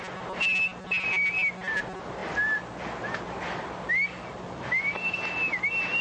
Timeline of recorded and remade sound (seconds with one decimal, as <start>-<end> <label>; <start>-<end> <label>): 0.0-6.0 recorded